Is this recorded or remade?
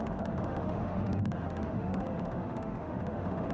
remade